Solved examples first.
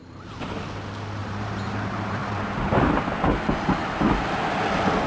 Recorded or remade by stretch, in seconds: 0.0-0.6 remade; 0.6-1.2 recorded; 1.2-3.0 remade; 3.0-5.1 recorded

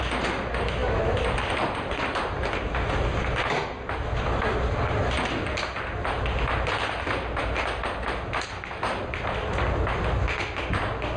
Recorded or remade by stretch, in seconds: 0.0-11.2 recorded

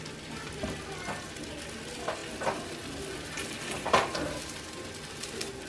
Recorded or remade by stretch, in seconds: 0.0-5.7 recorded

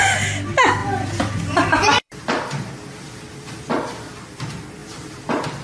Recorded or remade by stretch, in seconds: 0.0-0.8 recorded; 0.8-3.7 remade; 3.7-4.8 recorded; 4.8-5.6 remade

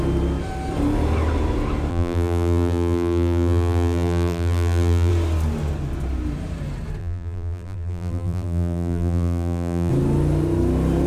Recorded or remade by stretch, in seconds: 0.0-1.9 recorded; 1.9-5.1 remade; 5.1-7.0 recorded; 7.0-9.9 remade; 9.9-11.1 recorded

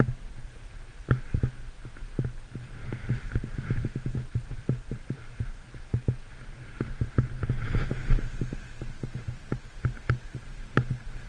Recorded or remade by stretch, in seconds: 0.0-2.8 recorded; 2.8-3.4 remade; 3.4-4.3 recorded; 4.3-5.2 remade; 5.2-11.3 recorded

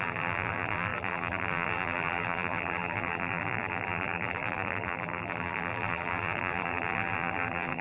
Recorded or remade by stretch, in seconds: 0.0-7.8 remade

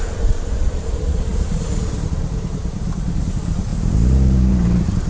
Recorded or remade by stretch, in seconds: 0.0-5.1 remade